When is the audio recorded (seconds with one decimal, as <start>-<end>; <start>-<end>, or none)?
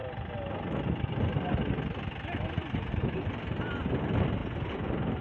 0.0-5.2